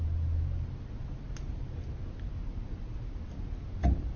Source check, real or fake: real